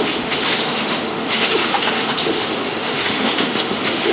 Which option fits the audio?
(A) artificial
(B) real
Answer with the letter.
A